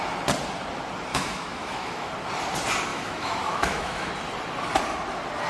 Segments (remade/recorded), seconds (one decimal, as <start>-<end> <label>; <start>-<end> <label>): 0.0-1.1 recorded; 1.1-2.1 remade; 2.1-2.9 recorded; 2.9-4.1 remade; 4.1-5.5 recorded